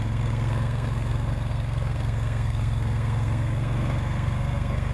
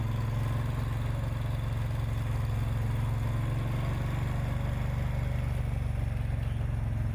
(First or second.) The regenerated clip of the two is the first